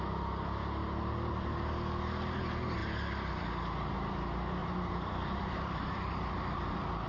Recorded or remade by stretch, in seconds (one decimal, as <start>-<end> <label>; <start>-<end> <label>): 0.0-4.6 recorded; 4.6-6.3 remade; 6.3-7.1 recorded